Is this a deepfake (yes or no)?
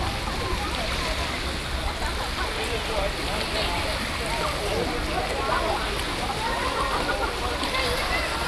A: no